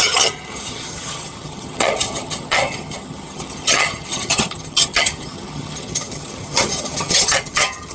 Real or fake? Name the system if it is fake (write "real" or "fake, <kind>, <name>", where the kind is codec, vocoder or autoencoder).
fake, vocoder, HiFi-GAN